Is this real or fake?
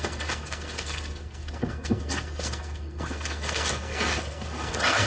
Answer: fake